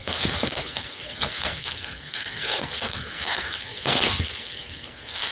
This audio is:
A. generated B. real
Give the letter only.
A